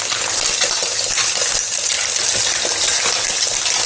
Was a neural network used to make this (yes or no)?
no